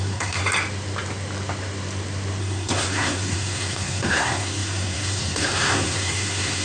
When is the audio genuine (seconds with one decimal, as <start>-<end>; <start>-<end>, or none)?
0.4-2.4

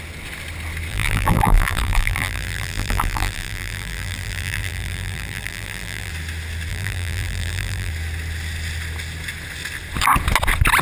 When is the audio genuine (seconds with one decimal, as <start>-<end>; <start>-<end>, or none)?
0.0-0.9; 6.1-6.7; 7.9-10.8

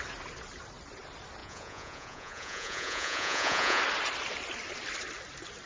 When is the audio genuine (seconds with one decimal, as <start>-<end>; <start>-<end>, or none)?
0.0-1.4; 3.8-5.7

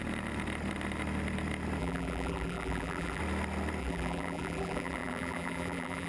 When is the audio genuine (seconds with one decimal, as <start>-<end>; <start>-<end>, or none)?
0.0-1.8; 3.2-3.8

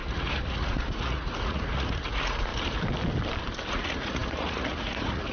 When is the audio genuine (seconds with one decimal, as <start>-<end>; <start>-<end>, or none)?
2.5-3.7